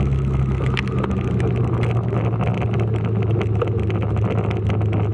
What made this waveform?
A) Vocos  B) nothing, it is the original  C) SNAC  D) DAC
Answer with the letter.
B